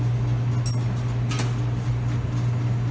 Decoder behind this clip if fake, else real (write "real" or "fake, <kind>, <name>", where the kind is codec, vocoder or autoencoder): real